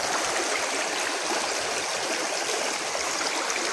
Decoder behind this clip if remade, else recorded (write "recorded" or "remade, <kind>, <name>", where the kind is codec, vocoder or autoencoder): recorded